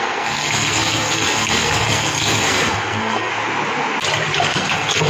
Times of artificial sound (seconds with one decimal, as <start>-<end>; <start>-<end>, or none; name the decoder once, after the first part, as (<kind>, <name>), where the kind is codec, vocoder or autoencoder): 0.0-3.3 (codec, SNAC); 4.4-5.1

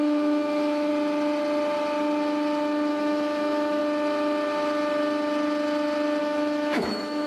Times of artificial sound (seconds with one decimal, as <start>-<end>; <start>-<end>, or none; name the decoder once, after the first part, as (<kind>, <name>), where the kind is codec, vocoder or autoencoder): 0.0-0.9 (autoencoder, DAC-VAE); 2.9-3.8; 6.2-7.3

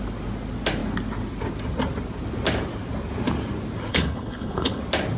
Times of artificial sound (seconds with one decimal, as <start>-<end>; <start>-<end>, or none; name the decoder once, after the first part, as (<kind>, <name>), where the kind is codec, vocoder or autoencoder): 3.9-4.8 (codec, HILCodec)

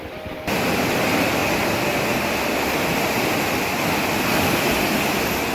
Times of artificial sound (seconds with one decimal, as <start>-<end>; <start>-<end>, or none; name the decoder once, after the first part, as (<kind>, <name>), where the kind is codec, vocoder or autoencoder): none

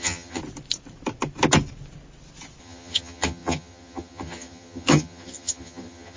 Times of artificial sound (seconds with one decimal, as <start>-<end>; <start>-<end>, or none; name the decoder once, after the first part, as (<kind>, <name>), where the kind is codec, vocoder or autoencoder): 0.0-0.4 (vocoder, HiFi-GAN); 2.6-6.2

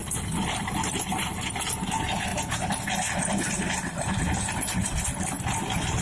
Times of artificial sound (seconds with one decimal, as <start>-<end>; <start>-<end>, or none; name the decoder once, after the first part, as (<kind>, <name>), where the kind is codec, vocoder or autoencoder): none

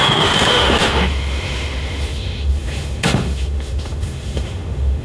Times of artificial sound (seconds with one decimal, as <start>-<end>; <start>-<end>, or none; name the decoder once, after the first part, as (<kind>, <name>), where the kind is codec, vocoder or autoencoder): 0.0-5.0 (autoencoder, DAC-VAE)